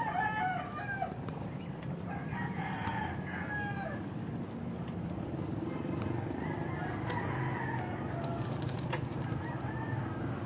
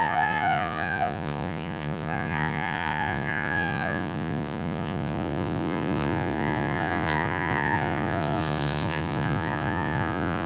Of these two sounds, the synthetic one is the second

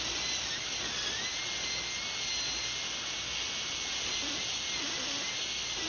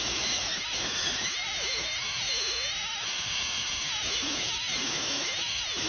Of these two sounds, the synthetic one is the second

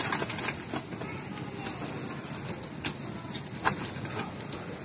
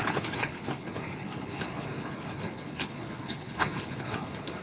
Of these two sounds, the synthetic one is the second